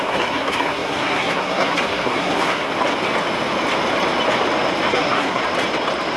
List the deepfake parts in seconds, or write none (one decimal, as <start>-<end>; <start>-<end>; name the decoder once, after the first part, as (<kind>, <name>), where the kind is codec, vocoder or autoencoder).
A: 0.0-2.7 (codec, SNAC); 4.9-5.4

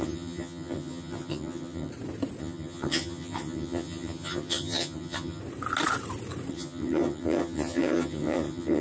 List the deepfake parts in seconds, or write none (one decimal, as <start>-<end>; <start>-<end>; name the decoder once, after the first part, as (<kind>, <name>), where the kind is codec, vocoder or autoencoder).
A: 0.0-1.9 (vocoder, HiFi-GAN); 2.4-5.4; 6.5-8.8

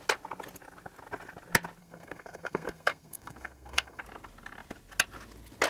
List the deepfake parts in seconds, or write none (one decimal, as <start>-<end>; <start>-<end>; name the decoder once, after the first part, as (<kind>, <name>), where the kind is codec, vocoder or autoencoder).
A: 1.8-4.0 (codec, SNAC)

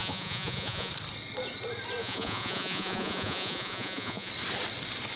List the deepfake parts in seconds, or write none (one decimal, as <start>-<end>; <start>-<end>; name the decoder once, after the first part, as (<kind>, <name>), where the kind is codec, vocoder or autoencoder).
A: 0.0-0.9 (vocoder, Vocos); 2.0-4.3

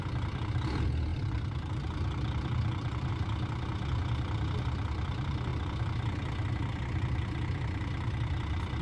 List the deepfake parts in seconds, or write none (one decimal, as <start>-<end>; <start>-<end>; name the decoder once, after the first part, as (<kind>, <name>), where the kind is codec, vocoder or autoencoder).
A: 1.1-3.1 (vocoder, BigVGAN v2)